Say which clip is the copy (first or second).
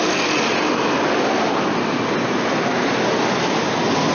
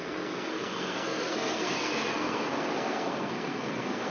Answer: second